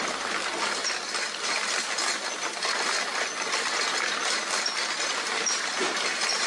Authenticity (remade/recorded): recorded